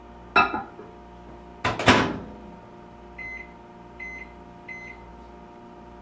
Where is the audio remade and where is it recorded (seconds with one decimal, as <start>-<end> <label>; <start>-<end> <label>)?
0.0-6.0 recorded